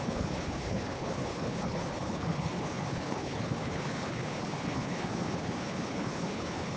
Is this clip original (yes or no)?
no